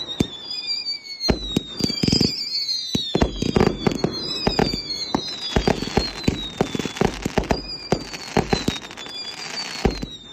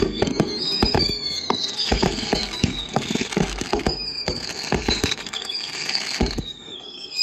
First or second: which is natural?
first